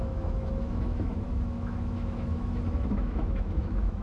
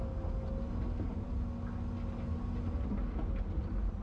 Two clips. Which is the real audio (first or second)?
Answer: second